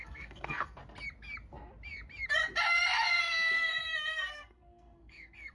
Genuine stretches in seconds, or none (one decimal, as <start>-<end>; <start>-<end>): 0.8-4.1